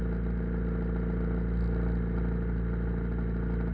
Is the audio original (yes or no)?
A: yes